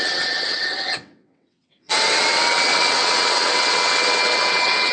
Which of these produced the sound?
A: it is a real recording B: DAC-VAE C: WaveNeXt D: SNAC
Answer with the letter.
C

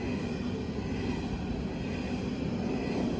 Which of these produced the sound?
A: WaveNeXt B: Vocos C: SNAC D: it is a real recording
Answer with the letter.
D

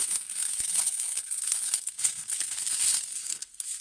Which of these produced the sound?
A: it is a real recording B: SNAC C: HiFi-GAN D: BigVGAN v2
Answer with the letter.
B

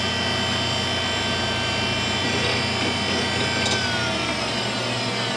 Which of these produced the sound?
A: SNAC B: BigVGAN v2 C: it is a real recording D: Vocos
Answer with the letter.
C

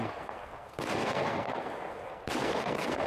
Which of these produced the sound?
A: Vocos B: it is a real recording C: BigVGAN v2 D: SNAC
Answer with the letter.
D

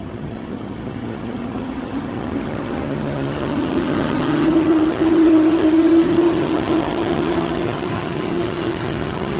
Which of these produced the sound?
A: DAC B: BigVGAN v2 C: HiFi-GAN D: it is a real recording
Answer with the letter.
C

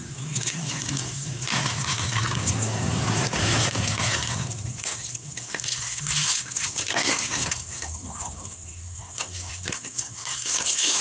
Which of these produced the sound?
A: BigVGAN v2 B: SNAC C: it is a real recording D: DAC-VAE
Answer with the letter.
B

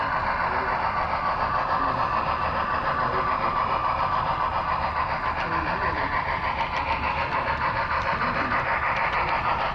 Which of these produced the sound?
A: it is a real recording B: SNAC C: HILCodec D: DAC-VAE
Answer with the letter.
A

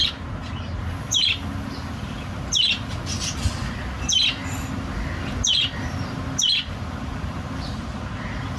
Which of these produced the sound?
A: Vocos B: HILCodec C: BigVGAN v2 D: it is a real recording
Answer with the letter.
D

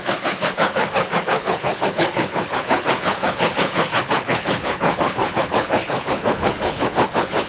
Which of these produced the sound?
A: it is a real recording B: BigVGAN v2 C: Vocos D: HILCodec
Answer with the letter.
D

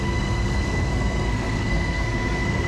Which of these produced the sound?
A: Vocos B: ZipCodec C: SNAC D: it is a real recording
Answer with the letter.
C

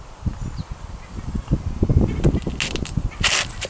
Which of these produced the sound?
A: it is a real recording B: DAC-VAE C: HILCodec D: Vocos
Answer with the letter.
A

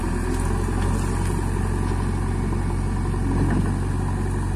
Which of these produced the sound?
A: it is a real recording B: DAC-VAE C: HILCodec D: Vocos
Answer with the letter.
A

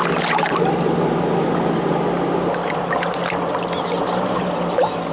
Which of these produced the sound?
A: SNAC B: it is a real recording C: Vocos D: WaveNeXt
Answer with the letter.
B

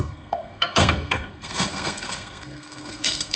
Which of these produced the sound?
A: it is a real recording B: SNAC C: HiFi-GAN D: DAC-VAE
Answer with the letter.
B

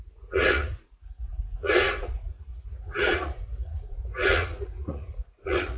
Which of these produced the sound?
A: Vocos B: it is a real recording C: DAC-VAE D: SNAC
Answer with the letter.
A